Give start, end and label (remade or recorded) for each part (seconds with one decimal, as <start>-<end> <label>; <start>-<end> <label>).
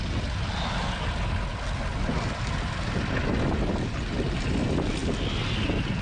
0.0-6.0 recorded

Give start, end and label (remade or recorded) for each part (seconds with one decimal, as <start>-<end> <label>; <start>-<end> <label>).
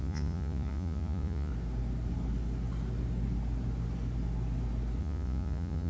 0.0-1.5 remade; 1.5-5.0 recorded; 5.0-5.9 remade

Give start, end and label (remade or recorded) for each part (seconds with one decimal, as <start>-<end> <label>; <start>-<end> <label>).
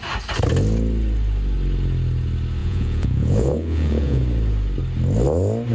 0.0-2.6 recorded; 2.6-4.2 remade; 4.2-5.7 recorded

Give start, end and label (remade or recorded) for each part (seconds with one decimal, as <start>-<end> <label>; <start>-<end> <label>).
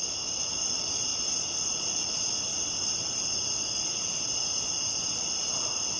0.0-6.0 recorded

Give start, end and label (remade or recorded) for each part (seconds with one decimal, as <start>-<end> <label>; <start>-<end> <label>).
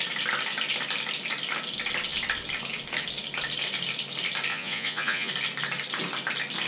0.0-4.5 recorded; 4.5-5.3 remade; 5.3-6.7 recorded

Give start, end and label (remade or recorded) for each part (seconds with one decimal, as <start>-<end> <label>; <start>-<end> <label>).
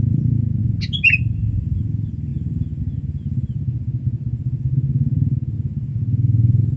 0.0-6.8 recorded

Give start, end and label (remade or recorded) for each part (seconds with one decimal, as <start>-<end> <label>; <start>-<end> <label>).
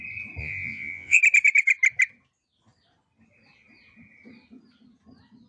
0.0-0.4 recorded; 0.4-1.2 remade; 1.2-5.5 recorded